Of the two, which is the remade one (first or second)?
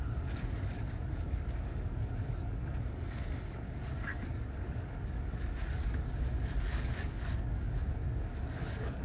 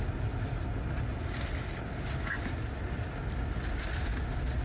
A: first